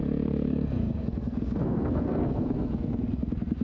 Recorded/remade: remade